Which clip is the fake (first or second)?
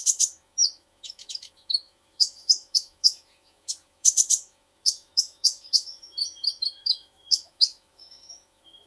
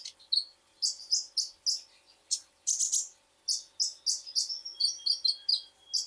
first